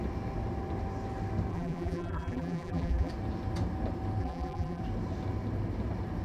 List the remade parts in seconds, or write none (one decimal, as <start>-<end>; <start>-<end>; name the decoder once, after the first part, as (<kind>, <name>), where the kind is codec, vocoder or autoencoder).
1.5-3.1 (vocoder, BigVGAN v2); 4.2-4.8